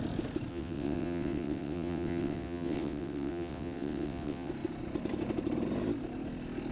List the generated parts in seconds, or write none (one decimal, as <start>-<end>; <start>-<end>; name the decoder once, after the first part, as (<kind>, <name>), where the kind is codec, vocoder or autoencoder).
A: 0.5-4.5 (vocoder, WaveNeXt)